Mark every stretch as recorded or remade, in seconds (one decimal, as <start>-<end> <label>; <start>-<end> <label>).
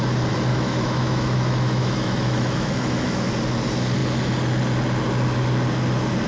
0.0-0.5 recorded; 0.5-3.3 remade; 3.3-6.3 recorded